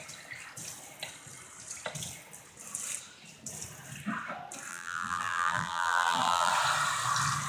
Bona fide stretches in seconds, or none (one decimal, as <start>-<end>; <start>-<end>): 0.0-4.7; 6.5-7.5